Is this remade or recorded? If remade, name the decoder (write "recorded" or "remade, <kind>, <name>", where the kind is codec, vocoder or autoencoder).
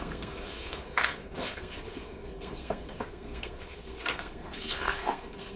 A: remade, codec, SNAC